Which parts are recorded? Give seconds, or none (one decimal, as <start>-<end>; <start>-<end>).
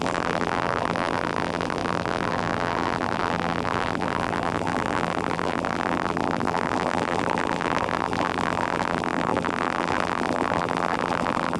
none